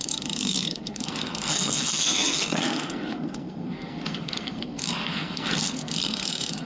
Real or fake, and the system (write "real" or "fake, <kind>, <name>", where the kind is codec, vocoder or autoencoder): fake, codec, SNAC